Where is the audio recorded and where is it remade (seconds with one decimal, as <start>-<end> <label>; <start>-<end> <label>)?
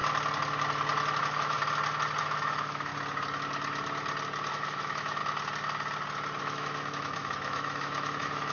0.0-1.2 recorded; 1.2-1.6 remade; 1.6-2.2 recorded; 2.2-2.9 remade; 2.9-4.5 recorded; 4.5-5.2 remade; 5.2-6.4 recorded; 6.4-8.5 remade